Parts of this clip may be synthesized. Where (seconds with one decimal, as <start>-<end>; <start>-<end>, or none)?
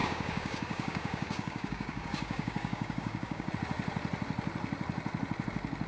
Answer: 0.0-3.5